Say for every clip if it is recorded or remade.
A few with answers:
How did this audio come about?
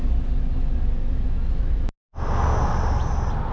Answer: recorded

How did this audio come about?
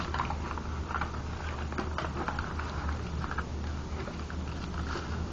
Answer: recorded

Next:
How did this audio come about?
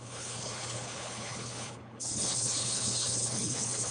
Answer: remade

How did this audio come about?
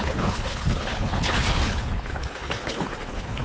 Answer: remade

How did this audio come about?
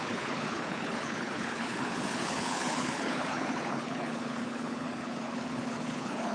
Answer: remade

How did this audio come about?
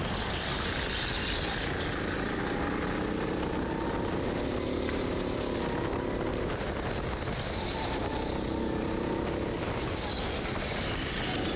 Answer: recorded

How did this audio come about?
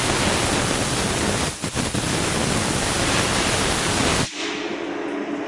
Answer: recorded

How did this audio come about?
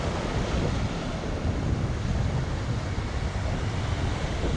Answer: recorded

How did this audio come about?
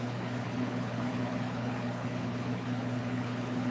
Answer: remade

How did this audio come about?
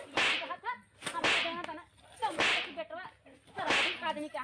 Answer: recorded